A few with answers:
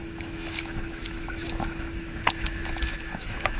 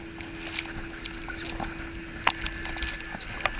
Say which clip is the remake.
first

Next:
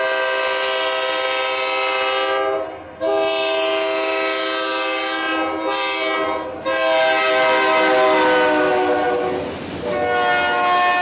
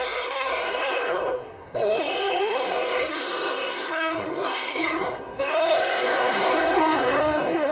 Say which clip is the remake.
second